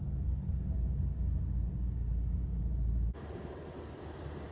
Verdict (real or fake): real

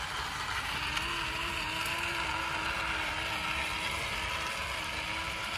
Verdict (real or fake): real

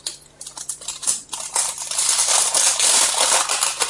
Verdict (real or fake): real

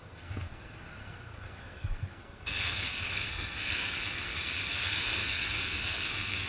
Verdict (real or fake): fake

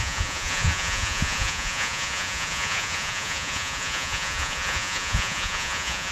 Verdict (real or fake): fake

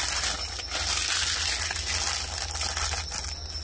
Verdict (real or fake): real